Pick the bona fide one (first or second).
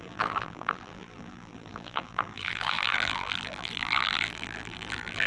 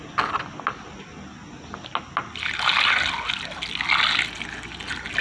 second